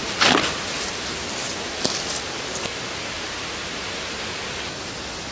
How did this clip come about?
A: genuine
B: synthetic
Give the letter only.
A